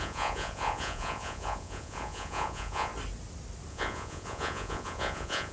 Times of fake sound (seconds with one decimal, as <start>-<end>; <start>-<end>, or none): 0.0-2.9; 3.7-5.5